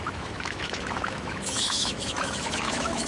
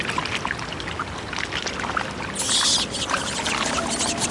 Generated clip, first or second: first